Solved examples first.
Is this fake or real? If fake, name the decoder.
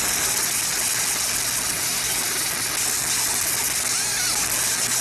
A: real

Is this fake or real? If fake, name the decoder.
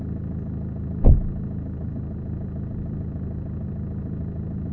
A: real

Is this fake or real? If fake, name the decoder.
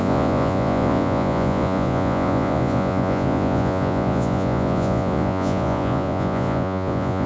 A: fake, vocoder, Vocos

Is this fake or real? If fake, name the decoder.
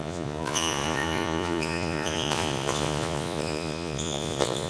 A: fake, vocoder, Vocos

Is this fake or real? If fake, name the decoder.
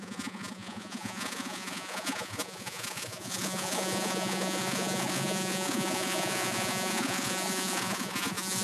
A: fake, vocoder, Vocos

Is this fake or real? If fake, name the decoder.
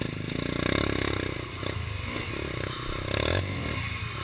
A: real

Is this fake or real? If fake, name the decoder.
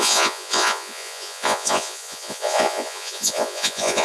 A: fake, vocoder, Vocos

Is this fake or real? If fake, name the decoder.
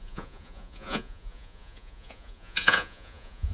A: fake, vocoder, Vocos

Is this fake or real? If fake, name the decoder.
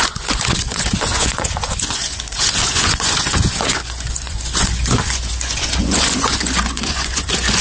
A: fake, vocoder, Vocos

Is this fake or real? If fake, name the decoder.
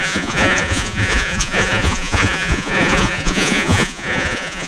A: fake, vocoder, Vocos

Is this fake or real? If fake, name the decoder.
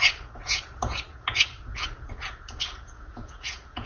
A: fake, vocoder, Vocos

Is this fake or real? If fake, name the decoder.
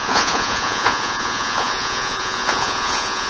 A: fake, vocoder, Vocos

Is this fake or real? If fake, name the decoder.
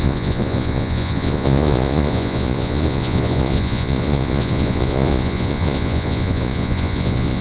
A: fake, vocoder, Vocos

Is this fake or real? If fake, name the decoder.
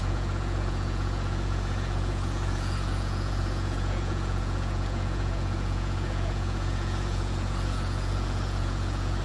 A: fake, vocoder, Vocos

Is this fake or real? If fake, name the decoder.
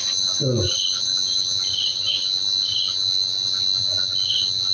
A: real